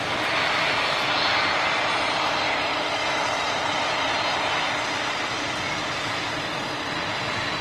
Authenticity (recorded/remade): recorded